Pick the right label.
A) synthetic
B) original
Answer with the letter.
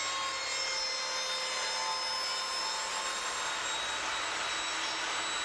B